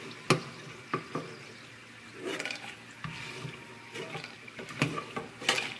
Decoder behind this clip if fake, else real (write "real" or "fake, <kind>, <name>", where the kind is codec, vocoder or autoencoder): real